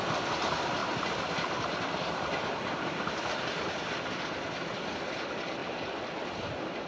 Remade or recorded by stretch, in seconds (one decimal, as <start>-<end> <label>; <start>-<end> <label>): 0.0-0.8 recorded; 0.8-3.2 remade; 3.2-5.6 recorded; 5.6-6.3 remade; 6.3-6.9 recorded